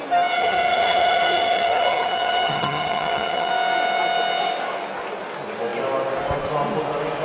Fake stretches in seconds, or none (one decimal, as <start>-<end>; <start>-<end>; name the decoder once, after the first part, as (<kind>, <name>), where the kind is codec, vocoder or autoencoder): 0.4-3.5 (vocoder, HiFi-GAN)